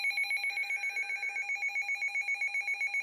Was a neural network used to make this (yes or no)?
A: no